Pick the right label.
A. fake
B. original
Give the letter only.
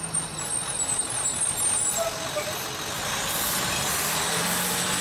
B